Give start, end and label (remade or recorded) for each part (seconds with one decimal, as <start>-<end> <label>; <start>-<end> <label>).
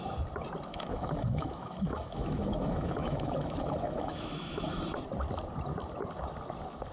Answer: 0.0-0.7 recorded; 0.7-4.8 remade; 4.8-6.9 recorded